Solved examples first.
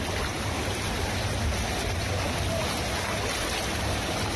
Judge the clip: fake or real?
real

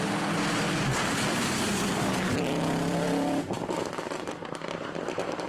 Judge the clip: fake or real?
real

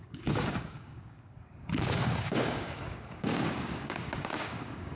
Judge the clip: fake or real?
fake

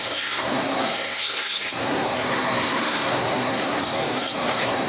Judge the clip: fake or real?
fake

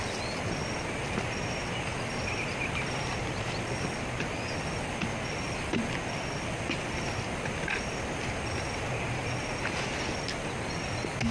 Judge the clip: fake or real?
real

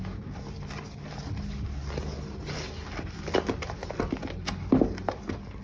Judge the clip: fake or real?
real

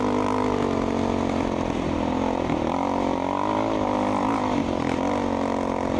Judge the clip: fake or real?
real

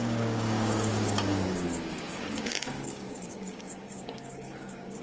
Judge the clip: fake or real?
fake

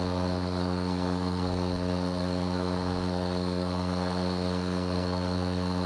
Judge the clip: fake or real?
fake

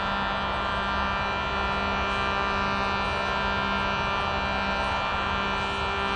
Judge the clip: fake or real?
real